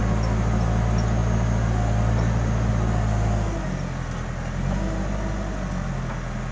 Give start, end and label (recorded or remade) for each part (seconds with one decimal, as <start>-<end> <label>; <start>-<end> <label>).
0.0-6.5 recorded